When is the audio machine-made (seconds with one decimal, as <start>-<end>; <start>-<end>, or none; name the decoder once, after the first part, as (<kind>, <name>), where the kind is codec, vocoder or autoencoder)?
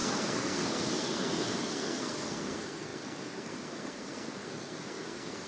0.0-5.5 (codec, SNAC)